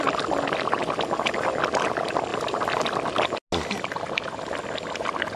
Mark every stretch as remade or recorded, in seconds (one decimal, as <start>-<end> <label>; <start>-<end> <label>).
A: 0.0-5.4 recorded